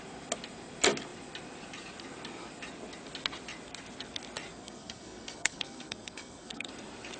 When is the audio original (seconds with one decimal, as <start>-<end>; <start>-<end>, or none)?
0.0-4.5; 6.7-7.2

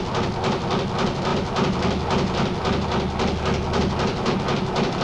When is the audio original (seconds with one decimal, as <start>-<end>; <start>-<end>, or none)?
0.0-5.0

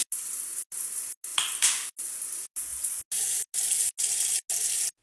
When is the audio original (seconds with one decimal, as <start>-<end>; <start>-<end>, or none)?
0.0-5.0

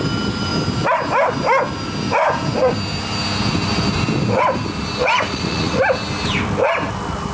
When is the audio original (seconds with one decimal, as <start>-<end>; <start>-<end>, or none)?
0.0-5.0; 5.8-7.3

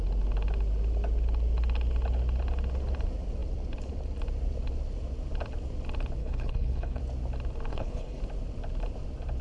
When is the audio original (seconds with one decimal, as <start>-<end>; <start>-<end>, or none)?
0.0-6.2; 7.0-7.7; 8.2-9.4